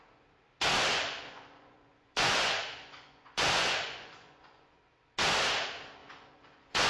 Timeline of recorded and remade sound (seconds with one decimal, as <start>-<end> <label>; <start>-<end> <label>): 0.0-0.9 recorded; 0.9-4.8 remade; 4.8-6.0 recorded; 6.0-6.9 remade